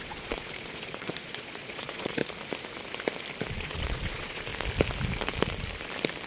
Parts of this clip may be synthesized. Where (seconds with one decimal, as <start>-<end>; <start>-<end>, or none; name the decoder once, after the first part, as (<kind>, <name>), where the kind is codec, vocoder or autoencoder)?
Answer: 0.0-2.2 (vocoder, Vocos); 3.5-4.5